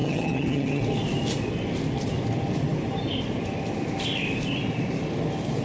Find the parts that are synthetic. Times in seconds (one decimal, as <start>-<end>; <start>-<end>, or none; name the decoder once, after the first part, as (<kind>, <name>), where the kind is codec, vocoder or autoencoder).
0.0-0.8 (vocoder, HiFi-GAN)

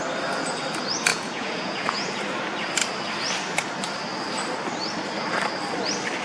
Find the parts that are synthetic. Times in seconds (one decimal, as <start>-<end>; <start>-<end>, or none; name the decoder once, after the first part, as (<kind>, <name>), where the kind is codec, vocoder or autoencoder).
1.1-2.2 (vocoder, Vocos)

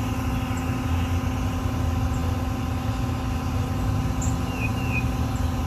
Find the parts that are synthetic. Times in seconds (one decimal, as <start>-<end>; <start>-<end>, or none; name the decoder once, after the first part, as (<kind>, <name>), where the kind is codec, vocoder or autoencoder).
none

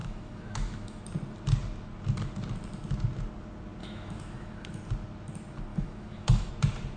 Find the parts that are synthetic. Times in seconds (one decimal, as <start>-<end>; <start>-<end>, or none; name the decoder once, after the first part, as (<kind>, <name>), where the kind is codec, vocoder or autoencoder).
0.0-1.0 (autoencoder, DAC-VAE); 3.8-4.7; 5.7-6.5

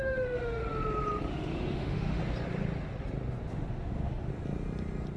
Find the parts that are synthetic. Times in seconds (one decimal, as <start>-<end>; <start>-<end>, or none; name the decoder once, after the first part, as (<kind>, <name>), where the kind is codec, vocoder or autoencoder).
0.0-0.6 (autoencoder, DAC-VAE); 1.3-2.2; 3.5-4.3